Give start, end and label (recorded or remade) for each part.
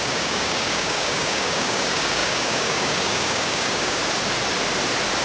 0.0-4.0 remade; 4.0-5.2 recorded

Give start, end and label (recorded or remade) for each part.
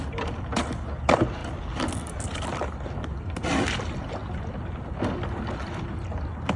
0.0-6.6 recorded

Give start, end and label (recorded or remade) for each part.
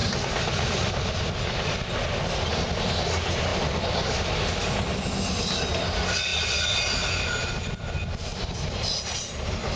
0.0-8.3 recorded; 8.3-9.0 remade; 9.0-9.8 recorded